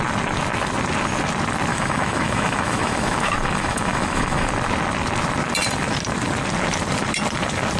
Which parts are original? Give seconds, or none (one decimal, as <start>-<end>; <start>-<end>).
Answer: 0.0-1.7; 4.5-7.8